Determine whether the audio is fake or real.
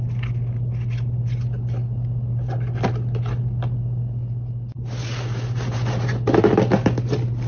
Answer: real